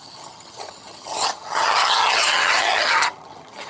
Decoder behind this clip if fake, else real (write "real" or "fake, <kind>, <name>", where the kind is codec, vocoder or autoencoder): fake, vocoder, HiFi-GAN